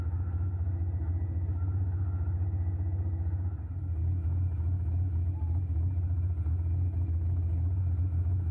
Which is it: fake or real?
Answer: real